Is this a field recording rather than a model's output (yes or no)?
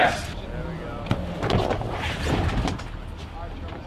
yes